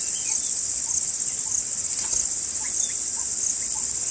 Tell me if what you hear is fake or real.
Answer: real